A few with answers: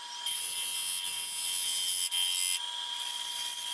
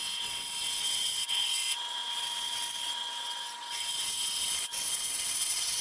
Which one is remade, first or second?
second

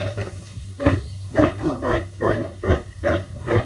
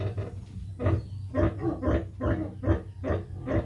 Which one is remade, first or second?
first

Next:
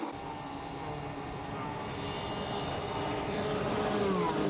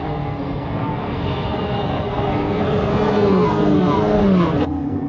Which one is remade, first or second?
second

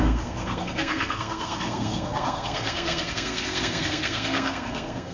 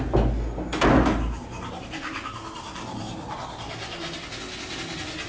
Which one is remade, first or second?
first